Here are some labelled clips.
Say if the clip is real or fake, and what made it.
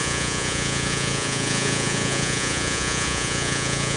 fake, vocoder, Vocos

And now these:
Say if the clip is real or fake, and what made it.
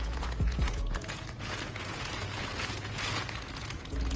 fake, vocoder, Vocos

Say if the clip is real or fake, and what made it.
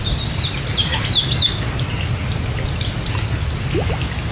real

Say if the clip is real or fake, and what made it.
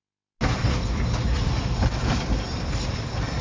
real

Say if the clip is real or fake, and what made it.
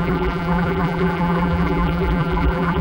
fake, vocoder, BigVGAN v2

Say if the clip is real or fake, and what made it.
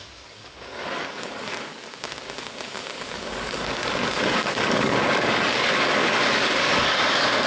fake, codec, DAC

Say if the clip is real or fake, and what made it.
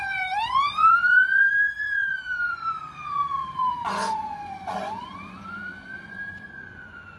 fake, vocoder, Vocos